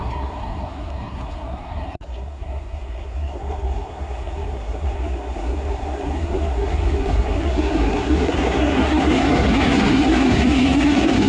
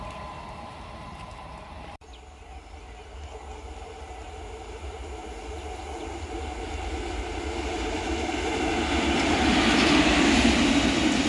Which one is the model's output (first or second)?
first